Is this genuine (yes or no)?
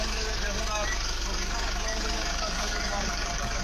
no